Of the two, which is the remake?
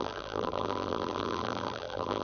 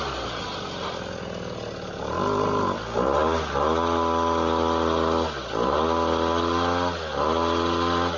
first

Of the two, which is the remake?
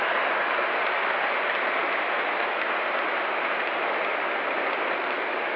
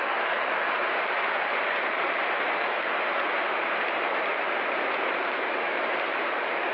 second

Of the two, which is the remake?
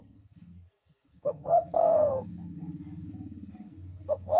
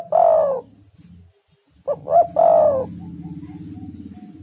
first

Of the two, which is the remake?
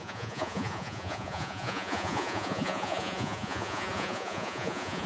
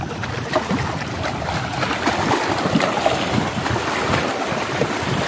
first